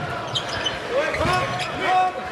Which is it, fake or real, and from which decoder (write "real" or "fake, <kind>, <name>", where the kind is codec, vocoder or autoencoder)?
real